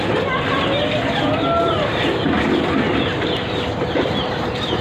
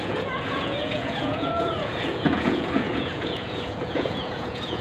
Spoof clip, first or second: second